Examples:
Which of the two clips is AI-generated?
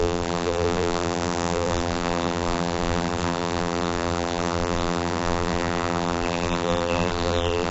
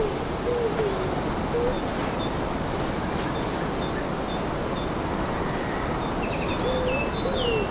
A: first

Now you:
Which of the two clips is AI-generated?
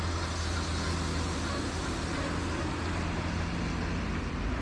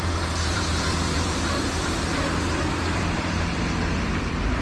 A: second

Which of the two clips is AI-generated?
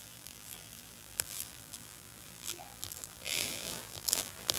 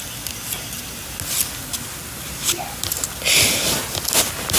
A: first